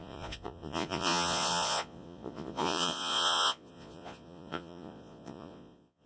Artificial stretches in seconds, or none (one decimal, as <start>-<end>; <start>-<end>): 0.0-6.1

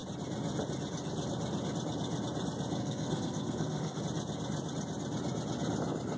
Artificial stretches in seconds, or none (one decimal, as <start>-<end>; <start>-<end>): 2.8-4.0

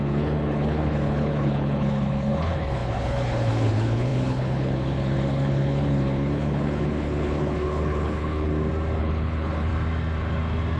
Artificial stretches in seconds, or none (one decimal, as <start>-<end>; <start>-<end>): 0.0-8.5; 9.0-9.7

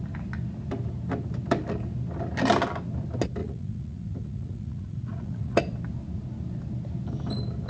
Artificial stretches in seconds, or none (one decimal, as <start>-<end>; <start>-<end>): 3.4-5.6